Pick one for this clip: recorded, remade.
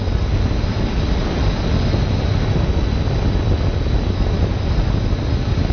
recorded